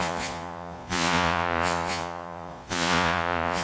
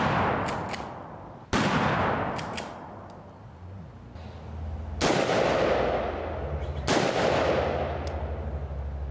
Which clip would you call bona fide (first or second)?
second